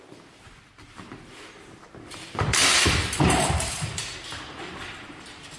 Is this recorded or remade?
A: remade